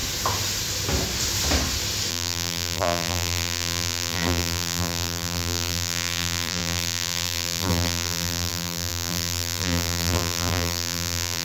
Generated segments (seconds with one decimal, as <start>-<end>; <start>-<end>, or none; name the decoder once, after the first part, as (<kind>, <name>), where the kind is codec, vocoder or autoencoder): 2.1-11.4 (vocoder, BigVGAN v2)